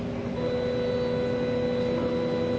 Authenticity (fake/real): real